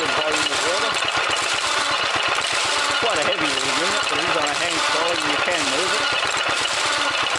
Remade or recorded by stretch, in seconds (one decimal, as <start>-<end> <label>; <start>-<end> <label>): 0.0-7.4 recorded